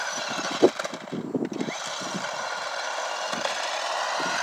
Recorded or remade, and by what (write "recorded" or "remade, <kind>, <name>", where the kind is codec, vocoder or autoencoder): recorded